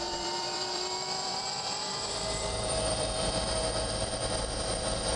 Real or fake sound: fake